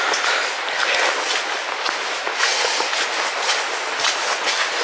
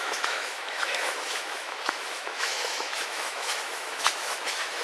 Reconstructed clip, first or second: second